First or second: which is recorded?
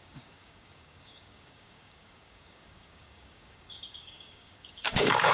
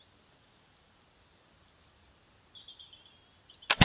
second